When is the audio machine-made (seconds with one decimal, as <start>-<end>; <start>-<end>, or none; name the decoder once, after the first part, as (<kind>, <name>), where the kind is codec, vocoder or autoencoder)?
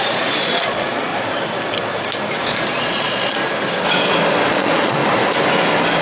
0.0-1.1 (vocoder, Vocos); 2.4-3.4; 4.5-5.0